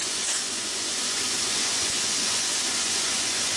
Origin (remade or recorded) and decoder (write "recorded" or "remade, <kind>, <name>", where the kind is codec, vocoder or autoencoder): remade, vocoder, Vocos